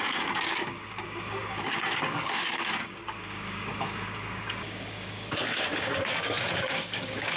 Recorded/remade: remade